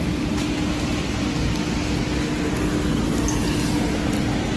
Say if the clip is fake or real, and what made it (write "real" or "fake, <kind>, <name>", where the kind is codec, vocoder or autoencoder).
real